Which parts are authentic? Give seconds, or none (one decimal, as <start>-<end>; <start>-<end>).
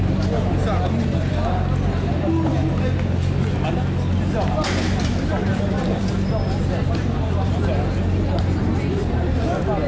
0.0-5.5; 6.1-6.8; 8.0-9.9